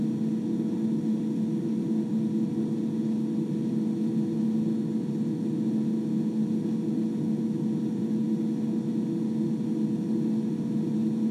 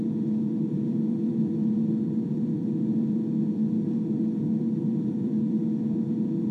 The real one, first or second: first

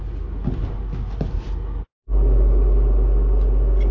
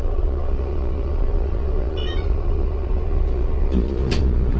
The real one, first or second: first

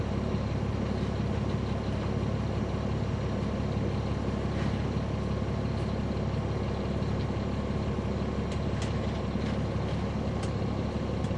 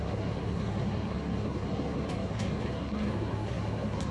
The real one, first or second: first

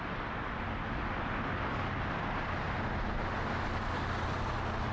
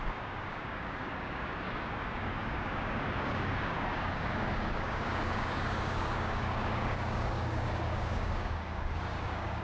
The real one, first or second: first